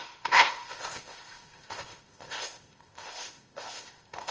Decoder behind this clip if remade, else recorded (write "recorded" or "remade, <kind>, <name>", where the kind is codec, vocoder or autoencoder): remade, codec, ZipCodec